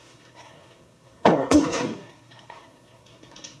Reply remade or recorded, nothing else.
remade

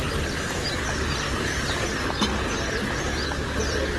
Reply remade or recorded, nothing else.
recorded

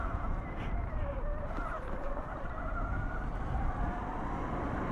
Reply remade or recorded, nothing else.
recorded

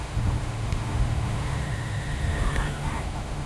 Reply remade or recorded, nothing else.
remade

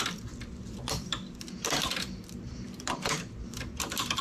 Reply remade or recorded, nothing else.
remade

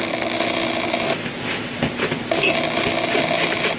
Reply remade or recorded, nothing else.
recorded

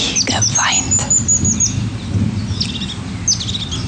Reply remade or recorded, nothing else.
recorded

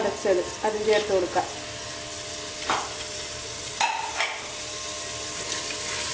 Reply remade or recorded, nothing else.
recorded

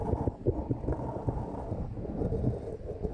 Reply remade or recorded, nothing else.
recorded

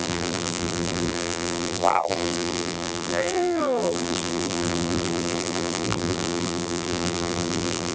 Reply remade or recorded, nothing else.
remade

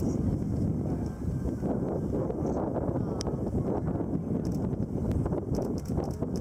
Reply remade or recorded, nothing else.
recorded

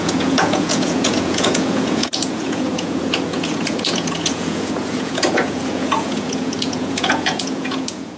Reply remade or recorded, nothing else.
remade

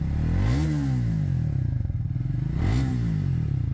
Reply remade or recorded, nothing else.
recorded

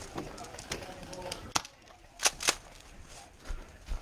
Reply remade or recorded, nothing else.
recorded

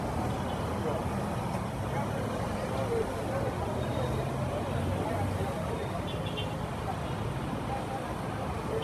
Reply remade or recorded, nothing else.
recorded